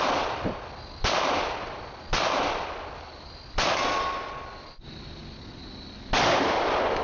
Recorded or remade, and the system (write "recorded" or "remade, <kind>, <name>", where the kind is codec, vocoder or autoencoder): recorded